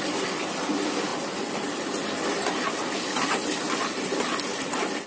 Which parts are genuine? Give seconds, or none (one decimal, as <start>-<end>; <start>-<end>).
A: 0.0-5.1